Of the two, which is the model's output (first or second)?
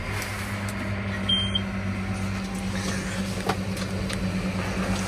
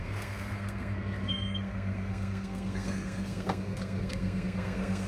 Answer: second